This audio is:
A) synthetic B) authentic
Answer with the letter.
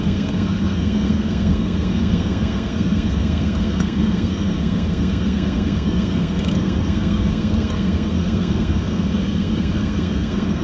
A